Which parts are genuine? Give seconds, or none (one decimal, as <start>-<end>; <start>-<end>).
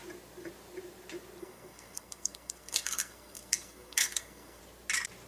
0.0-1.4; 4.6-5.3